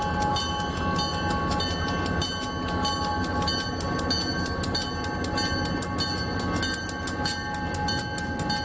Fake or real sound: real